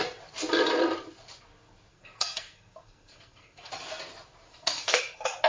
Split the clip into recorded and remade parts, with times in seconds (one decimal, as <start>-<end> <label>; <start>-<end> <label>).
0.0-1.9 recorded; 1.9-3.7 remade; 3.7-4.5 recorded; 4.5-5.0 remade; 5.0-5.5 recorded